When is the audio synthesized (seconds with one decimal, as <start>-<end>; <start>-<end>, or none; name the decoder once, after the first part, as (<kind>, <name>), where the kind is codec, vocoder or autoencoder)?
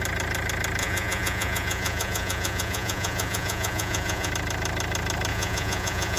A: 0.8-4.3 (vocoder, Vocos); 5.3-6.2